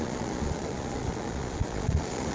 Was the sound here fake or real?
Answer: fake